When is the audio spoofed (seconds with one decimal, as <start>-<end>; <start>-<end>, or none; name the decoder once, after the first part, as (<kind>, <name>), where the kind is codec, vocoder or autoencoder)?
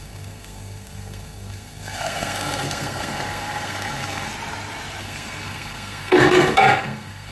0.0-4.3 (codec, SNAC); 5.0-7.3